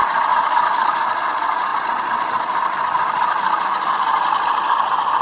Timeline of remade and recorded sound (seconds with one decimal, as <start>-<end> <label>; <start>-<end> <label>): 0.0-0.5 remade; 0.5-5.2 recorded